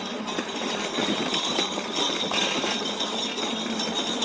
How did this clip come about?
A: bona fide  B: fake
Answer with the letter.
B